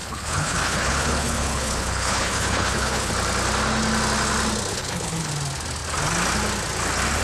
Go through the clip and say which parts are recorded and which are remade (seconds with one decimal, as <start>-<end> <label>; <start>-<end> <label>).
0.0-3.1 remade; 3.1-4.7 recorded; 4.7-5.3 remade; 5.3-7.2 recorded